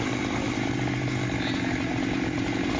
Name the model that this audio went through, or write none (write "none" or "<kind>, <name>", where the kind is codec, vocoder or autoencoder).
none